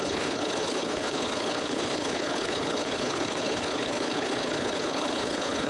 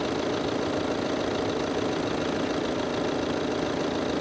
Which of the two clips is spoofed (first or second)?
first